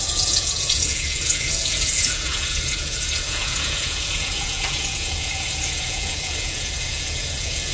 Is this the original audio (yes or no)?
no